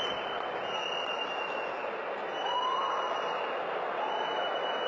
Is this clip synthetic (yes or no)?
no